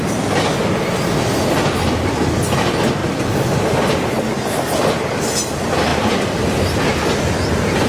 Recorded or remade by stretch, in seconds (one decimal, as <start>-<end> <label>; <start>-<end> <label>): 0.0-3.0 recorded; 3.0-5.0 remade; 5.0-5.9 recorded; 5.9-6.8 remade; 6.8-7.9 recorded